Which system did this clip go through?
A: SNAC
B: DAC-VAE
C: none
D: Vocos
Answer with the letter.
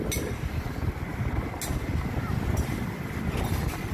C